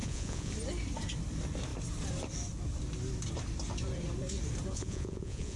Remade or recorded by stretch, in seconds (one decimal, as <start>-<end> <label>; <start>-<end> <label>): 0.0-0.5 remade; 0.5-4.7 recorded; 4.7-5.6 remade

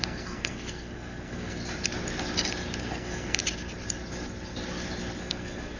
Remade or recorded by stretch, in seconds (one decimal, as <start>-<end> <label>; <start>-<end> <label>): 0.0-1.6 remade; 1.6-2.8 recorded; 2.8-3.4 remade; 3.4-5.2 recorded; 5.2-5.8 remade